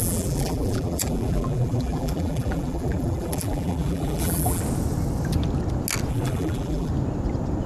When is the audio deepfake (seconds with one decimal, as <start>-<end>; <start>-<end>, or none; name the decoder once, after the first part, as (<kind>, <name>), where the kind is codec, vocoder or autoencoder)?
0.0-4.6 (vocoder, BigVGAN v2); 6.1-6.9